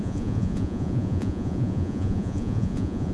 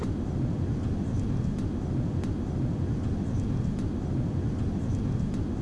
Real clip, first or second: second